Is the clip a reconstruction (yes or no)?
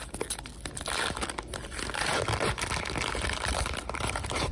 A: no